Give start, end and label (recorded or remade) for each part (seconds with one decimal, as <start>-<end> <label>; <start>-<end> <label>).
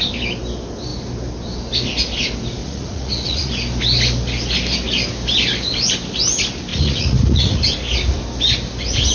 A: 0.0-2.6 recorded; 2.6-3.5 remade; 3.5-6.7 recorded; 6.7-7.6 remade; 7.6-9.1 recorded